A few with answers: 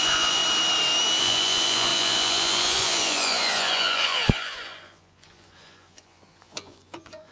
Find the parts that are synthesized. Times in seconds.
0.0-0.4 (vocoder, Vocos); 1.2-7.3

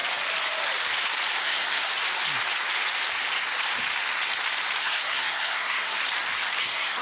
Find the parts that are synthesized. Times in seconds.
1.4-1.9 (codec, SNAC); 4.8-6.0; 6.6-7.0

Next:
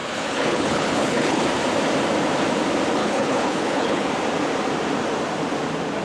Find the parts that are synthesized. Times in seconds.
0.0-1.4 (codec, HILCodec); 3.0-4.1

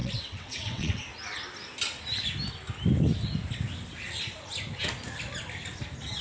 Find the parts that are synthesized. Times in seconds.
0.0-1.0 (vocoder, WaveNeXt)